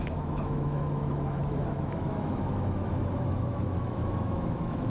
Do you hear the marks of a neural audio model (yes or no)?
yes